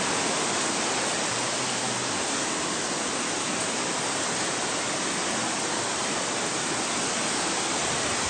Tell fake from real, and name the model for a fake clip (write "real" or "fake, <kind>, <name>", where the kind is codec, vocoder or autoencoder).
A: real